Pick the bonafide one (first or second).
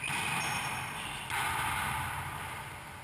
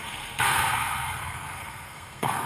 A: first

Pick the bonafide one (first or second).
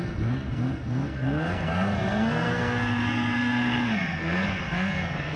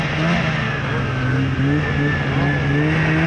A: second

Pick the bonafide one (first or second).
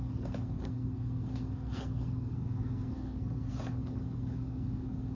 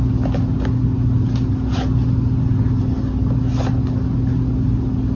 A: second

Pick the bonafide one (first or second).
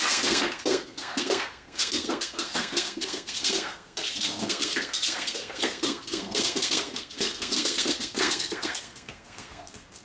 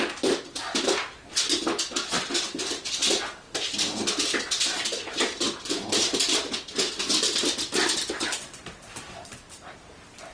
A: second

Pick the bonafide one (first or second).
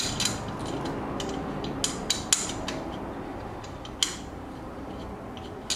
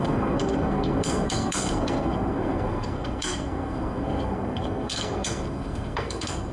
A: first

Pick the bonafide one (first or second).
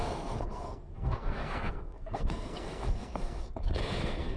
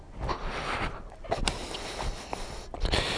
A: second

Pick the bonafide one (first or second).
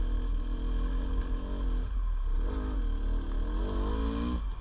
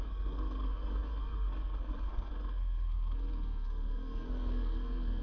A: first